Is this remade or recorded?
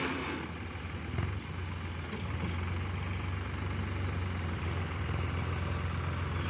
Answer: recorded